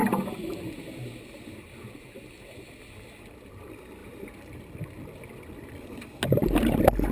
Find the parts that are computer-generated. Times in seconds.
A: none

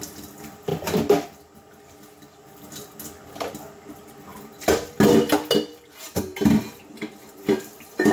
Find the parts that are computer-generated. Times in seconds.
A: 7.2-8.1 (vocoder, BigVGAN v2)

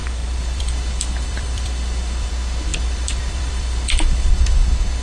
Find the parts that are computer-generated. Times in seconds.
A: 0.0-2.3 (vocoder, BigVGAN v2); 2.7-4.3

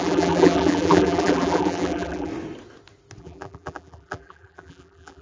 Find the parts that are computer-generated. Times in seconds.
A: 0.0-2.3 (vocoder, BigVGAN v2); 3.2-5.2